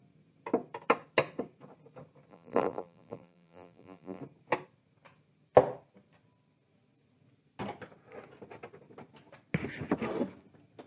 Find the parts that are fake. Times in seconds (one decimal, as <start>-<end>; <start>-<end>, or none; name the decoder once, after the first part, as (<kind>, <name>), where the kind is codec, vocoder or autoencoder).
2.3-4.2 (vocoder, BigVGAN v2)